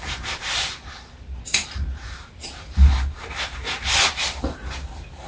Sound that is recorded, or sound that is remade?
remade